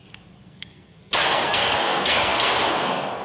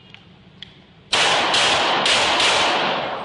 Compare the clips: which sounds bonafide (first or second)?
second